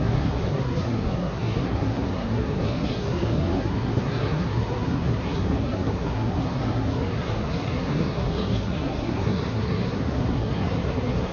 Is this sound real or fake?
fake